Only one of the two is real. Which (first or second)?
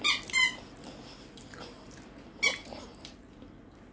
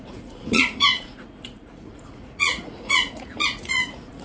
first